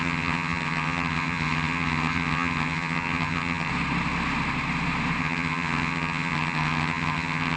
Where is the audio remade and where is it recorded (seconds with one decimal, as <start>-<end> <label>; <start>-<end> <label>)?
0.0-3.7 remade; 3.7-5.2 recorded; 5.2-7.6 remade